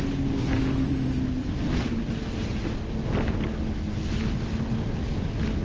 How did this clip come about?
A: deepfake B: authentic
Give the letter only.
B